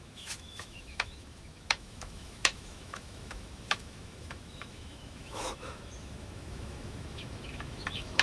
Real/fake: fake